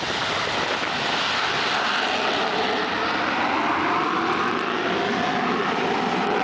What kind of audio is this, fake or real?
real